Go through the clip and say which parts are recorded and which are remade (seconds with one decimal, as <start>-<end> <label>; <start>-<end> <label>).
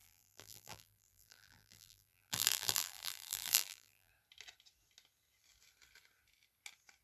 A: 0.0-4.1 remade; 4.1-7.0 recorded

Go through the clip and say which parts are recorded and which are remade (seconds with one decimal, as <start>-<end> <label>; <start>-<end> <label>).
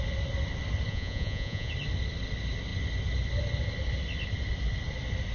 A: 0.0-0.9 recorded; 0.9-1.7 remade; 1.7-5.3 recorded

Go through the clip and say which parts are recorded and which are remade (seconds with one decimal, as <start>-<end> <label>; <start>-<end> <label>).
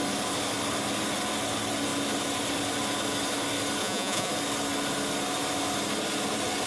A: 0.0-3.8 recorded; 3.8-4.3 remade; 4.3-6.7 recorded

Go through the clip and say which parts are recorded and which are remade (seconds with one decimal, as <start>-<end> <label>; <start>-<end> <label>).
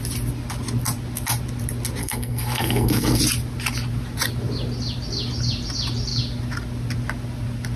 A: 0.0-2.0 recorded; 2.0-3.2 remade; 3.2-7.8 recorded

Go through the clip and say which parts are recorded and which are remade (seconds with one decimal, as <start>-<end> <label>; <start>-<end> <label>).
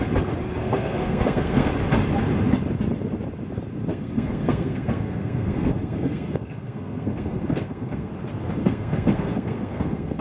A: 0.0-0.6 recorded; 0.6-1.7 remade; 1.7-3.9 recorded; 3.9-8.1 remade; 8.1-8.6 recorded; 8.6-10.2 remade